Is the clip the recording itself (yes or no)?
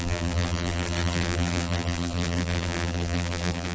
no